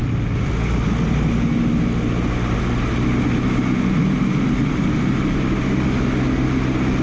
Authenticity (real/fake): real